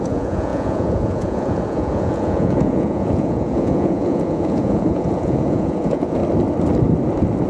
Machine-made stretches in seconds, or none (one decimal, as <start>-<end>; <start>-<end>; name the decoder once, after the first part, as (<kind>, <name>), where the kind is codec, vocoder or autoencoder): 0.0-6.2 (vocoder, Vocos)